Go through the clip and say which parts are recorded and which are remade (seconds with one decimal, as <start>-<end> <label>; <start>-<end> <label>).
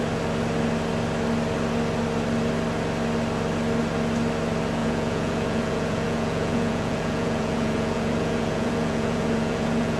0.0-4.8 recorded; 4.8-10.0 remade